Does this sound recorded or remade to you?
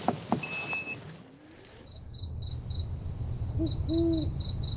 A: recorded